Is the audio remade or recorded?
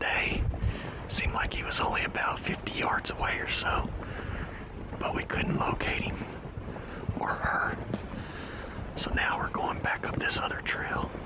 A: recorded